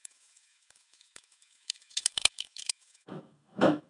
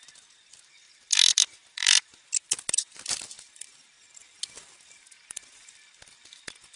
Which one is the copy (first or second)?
first